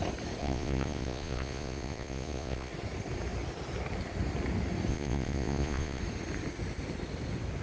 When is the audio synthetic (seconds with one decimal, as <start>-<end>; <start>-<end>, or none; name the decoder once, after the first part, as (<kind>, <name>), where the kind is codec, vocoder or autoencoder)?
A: 0.4-2.7 (vocoder, Vocos); 4.9-6.0